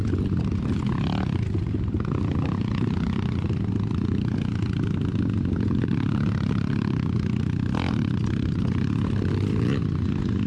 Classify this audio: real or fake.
real